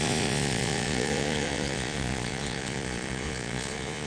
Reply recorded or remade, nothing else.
remade